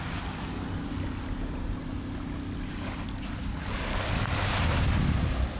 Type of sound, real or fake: real